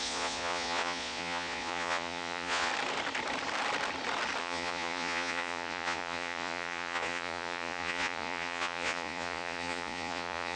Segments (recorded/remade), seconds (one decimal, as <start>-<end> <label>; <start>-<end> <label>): 0.0-2.7 remade; 2.7-4.4 recorded; 4.4-10.6 remade